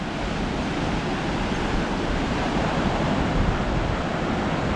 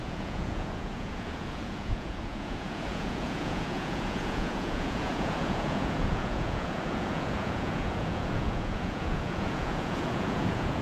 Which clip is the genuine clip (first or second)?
first